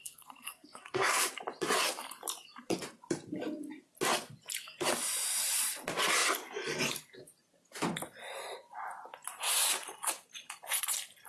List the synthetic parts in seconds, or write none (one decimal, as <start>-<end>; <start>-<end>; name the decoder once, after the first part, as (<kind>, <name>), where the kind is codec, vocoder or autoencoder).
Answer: 0.0-1.3 (codec, SNAC)